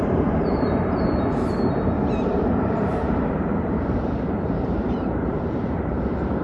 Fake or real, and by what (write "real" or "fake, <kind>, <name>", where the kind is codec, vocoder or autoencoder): fake, vocoder, BigVGAN v2